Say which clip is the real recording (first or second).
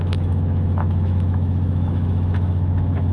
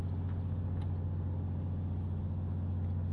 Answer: second